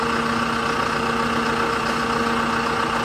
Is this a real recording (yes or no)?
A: yes